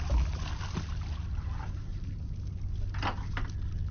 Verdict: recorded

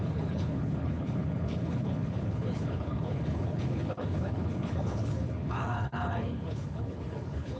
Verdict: remade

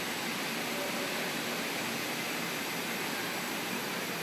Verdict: recorded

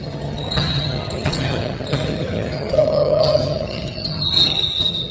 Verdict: remade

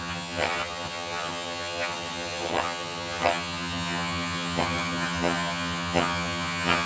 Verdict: remade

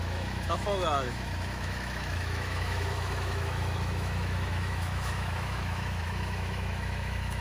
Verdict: remade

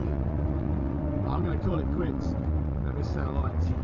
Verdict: remade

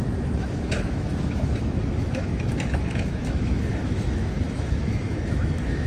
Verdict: remade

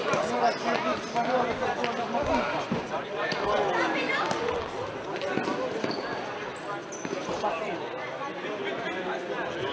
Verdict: recorded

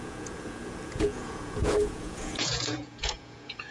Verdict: remade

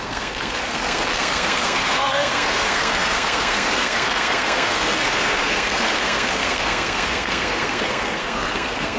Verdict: remade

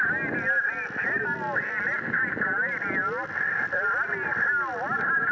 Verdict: recorded